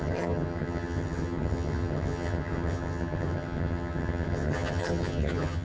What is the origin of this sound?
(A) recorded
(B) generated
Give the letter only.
B